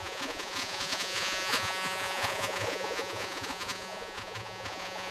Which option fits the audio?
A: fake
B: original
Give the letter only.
A